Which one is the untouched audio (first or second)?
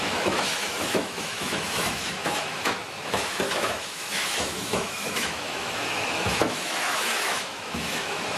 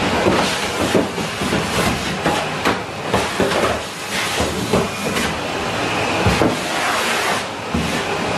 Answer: second